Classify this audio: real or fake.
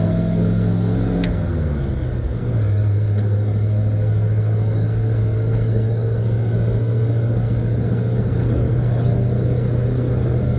fake